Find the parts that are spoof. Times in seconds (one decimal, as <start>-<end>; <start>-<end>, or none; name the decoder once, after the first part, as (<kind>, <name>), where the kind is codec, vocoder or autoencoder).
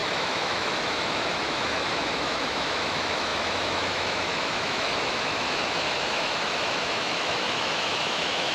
0.0-8.5 (autoencoder, DAC-VAE)